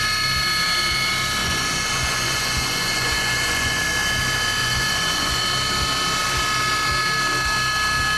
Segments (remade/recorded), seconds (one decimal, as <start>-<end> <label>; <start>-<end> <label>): 0.0-1.4 recorded; 1.4-3.8 remade; 3.8-4.6 recorded; 4.6-5.4 remade; 5.4-8.2 recorded